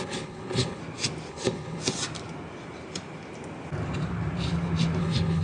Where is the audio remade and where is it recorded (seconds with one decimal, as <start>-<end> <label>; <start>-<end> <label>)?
0.0-0.8 remade; 0.8-1.3 recorded; 1.3-1.8 remade; 1.8-5.0 recorded; 5.0-5.4 remade